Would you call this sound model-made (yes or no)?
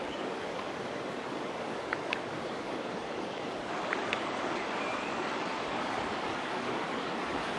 yes